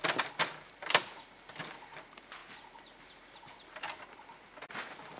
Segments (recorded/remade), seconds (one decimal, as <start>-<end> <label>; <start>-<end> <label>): 0.0-5.2 recorded